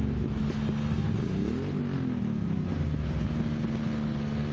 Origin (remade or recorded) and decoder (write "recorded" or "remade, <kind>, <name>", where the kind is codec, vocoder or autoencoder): recorded